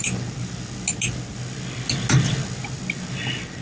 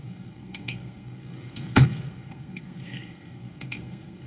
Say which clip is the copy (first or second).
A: second